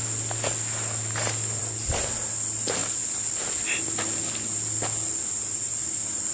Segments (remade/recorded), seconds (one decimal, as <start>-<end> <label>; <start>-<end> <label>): 0.0-1.6 recorded; 1.6-2.1 remade; 2.1-6.3 recorded